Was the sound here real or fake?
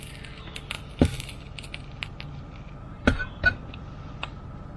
real